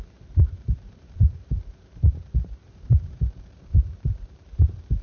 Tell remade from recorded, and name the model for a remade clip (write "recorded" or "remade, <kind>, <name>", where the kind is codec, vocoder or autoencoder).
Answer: remade, vocoder, BigVGAN v2